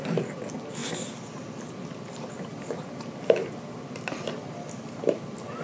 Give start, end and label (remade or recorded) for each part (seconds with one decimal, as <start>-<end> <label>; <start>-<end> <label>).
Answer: 0.0-5.6 recorded